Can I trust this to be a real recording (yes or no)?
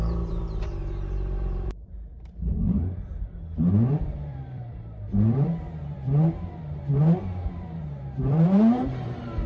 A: no